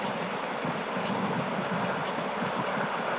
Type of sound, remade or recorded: recorded